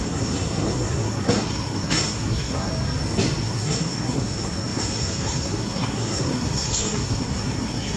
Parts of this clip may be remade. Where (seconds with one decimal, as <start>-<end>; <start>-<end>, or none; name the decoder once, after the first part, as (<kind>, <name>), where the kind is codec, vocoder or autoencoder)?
0.0-2.7 (codec, SNAC); 3.4-8.0